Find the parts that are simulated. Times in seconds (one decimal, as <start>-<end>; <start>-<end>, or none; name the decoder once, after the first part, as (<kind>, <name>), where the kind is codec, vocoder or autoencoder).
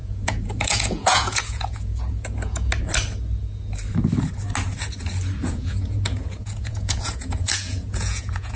0.0-2.7 (vocoder, Vocos); 5.5-8.6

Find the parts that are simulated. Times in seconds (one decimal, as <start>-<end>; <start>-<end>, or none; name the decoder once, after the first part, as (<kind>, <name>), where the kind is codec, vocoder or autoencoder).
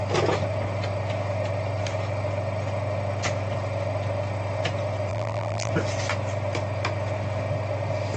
5.1-5.7 (vocoder, BigVGAN v2)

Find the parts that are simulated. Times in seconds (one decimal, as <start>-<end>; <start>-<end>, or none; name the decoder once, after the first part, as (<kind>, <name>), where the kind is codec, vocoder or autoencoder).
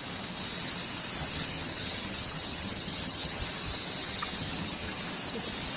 1.2-3.4 (vocoder, HiFi-GAN); 4.0-5.0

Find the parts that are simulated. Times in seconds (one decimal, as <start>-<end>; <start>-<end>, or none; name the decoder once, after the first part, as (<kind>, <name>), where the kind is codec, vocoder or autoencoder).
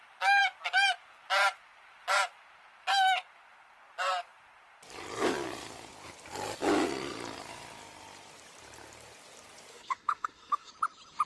9.7-10.7 (autoencoder, DAC-VAE)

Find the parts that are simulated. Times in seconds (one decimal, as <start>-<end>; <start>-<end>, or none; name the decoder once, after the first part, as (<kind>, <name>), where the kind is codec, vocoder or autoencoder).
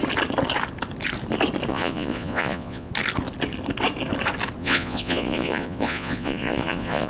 1.7-2.9 (vocoder, Vocos); 4.6-7.1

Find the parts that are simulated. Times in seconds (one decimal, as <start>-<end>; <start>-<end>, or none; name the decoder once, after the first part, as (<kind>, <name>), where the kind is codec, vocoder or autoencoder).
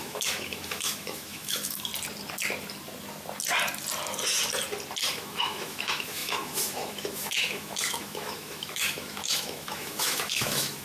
0.0-1.9 (autoencoder, DAC-VAE); 5.1-10.8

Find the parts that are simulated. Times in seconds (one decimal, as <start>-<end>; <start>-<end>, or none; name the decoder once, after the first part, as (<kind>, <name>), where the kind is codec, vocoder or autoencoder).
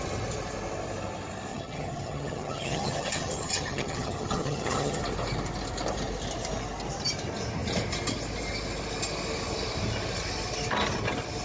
1.5-5.0 (vocoder, HiFi-GAN)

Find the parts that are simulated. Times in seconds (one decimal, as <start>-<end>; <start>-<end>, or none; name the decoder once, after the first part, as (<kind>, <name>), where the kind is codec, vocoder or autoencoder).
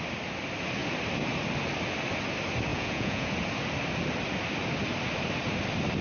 2.7-3.3 (vocoder, Vocos)